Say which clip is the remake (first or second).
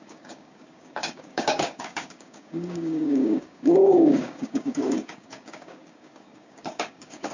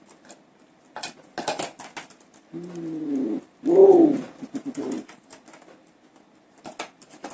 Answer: first